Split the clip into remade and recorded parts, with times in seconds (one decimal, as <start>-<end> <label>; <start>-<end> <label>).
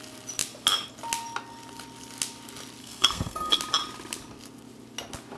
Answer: 0.0-2.8 recorded; 2.8-3.6 remade; 3.6-5.4 recorded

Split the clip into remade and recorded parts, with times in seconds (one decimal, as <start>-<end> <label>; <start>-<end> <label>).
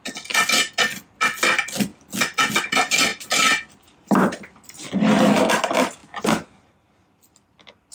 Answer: 0.0-7.9 recorded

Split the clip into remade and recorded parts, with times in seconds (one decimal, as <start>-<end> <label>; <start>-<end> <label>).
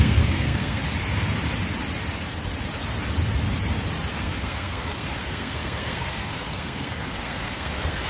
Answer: 0.0-0.8 remade; 0.8-4.1 recorded; 4.1-8.1 remade